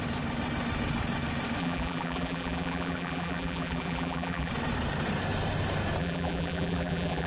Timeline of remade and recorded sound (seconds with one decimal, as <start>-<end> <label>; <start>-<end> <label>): 0.0-1.6 recorded; 1.6-4.5 remade; 4.5-6.0 recorded; 6.0-7.3 remade